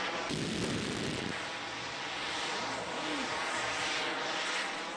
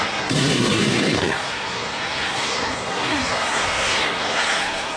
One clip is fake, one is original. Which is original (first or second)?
first